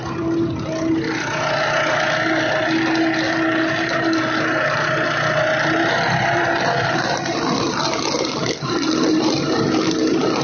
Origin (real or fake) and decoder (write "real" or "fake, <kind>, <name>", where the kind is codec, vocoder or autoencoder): real